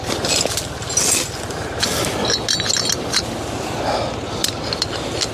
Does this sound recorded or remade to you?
recorded